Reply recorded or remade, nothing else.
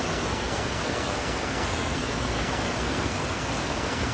remade